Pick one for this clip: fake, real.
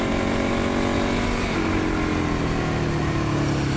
real